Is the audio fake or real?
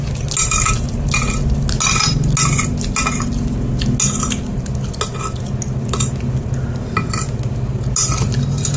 real